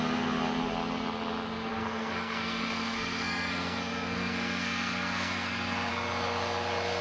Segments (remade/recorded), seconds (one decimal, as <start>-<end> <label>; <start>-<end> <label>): 0.0-1.7 recorded; 1.7-5.9 remade; 5.9-7.0 recorded